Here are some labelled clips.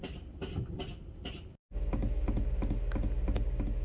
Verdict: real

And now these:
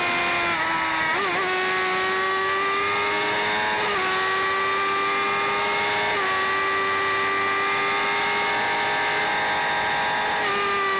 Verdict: real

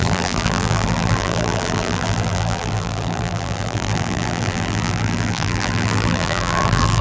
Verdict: fake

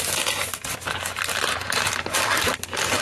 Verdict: real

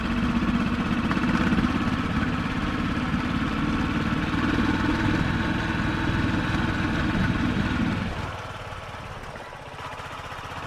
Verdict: real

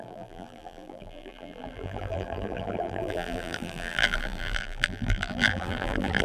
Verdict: fake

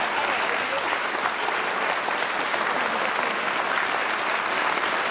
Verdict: real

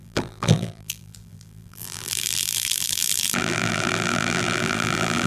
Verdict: fake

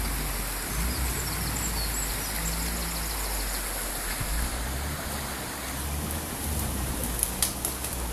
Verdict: real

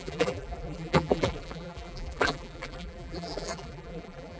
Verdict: fake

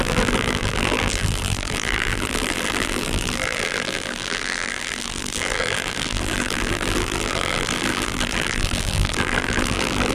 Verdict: fake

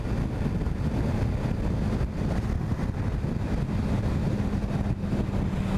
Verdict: real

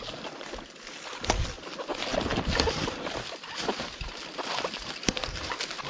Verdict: real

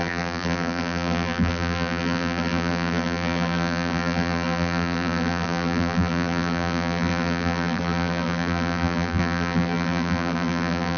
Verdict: fake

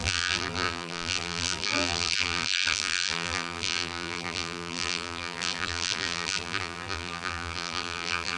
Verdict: fake